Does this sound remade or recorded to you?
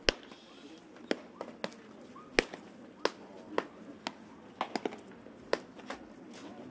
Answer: recorded